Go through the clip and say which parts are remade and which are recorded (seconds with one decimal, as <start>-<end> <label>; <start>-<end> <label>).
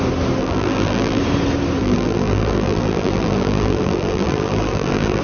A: 0.0-0.4 recorded; 0.4-1.2 remade; 1.2-1.8 recorded; 1.8-5.2 remade